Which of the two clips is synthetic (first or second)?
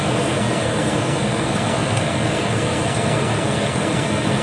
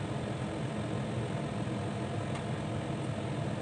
first